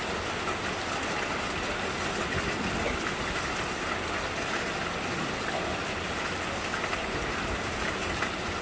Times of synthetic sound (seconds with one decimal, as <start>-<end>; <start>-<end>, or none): 7.0-8.2